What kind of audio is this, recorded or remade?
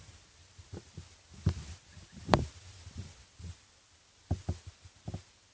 recorded